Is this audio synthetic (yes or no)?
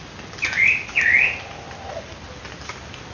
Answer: no